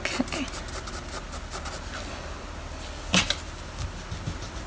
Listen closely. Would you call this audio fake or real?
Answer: real